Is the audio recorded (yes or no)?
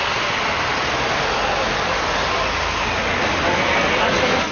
yes